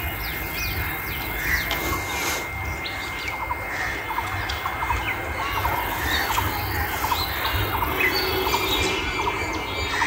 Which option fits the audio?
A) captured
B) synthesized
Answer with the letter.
A